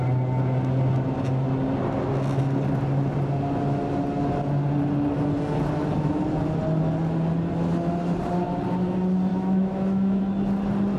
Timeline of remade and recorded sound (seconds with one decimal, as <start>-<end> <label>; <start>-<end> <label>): 0.0-9.3 recorded; 9.3-10.2 remade; 10.2-11.0 recorded